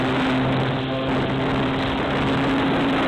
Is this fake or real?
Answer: real